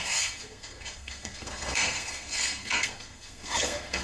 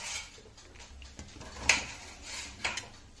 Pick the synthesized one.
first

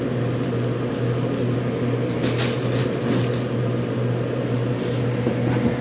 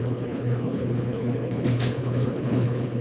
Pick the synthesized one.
second